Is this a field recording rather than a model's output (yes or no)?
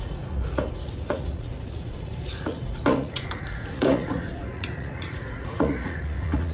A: no